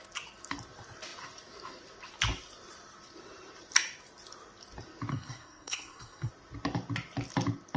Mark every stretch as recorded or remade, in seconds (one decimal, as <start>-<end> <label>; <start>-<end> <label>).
0.0-5.1 recorded; 5.1-6.3 remade; 6.3-7.8 recorded